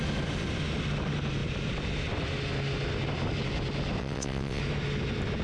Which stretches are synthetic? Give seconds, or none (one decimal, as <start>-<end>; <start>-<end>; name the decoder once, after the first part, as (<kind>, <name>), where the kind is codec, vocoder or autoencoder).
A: 4.0-4.6 (vocoder, WaveNeXt)